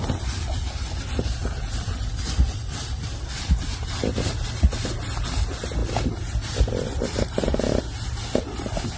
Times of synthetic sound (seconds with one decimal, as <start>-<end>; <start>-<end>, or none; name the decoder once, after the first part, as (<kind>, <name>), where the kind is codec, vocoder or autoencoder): none